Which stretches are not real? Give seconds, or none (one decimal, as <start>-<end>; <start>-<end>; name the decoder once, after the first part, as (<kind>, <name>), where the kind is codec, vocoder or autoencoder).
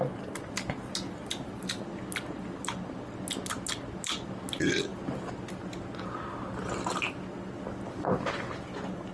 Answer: none